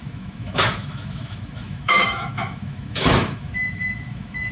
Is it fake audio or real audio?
fake